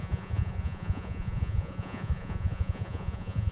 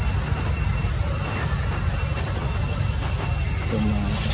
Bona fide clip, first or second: second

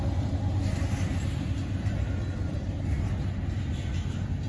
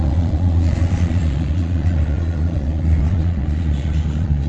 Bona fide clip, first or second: first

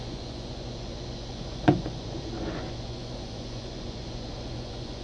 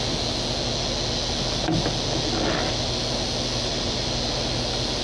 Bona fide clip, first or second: second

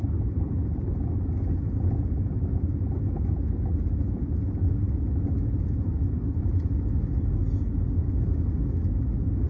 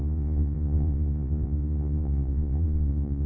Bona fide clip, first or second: first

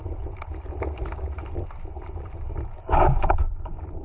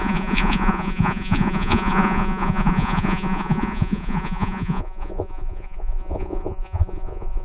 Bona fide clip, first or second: first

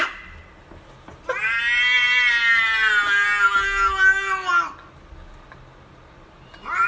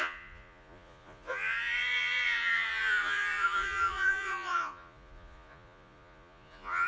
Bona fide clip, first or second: first